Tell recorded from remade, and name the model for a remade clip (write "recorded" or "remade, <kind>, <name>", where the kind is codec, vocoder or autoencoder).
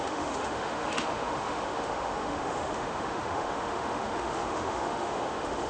remade, autoencoder, DAC-VAE